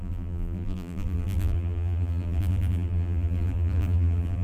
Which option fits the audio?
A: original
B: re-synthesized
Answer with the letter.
B